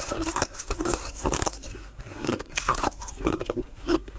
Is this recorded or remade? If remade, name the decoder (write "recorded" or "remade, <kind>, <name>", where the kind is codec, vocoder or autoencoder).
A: remade, codec, SNAC